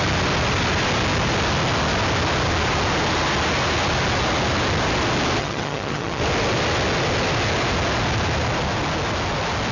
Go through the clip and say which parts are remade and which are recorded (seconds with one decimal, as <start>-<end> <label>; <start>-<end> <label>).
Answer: 0.0-5.4 recorded; 5.4-6.2 remade; 6.2-9.7 recorded